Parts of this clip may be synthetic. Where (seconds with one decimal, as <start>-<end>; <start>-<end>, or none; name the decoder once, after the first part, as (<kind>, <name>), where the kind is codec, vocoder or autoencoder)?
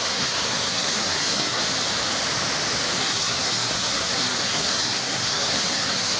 0.0-1.6 (codec, SNAC); 3.0-6.2